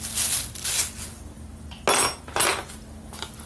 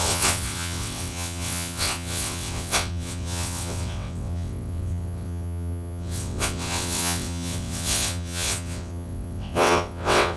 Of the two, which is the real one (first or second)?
first